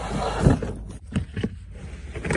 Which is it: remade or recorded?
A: recorded